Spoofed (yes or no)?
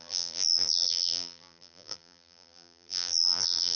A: yes